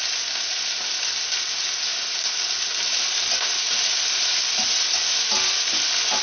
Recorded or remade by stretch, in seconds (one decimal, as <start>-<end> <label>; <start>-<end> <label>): 0.0-6.2 recorded